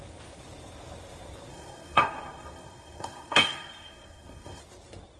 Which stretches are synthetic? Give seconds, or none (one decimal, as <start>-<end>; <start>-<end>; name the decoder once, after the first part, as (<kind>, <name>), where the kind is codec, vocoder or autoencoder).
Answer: 1.5-4.6 (codec, SNAC)